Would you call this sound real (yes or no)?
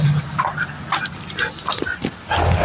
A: yes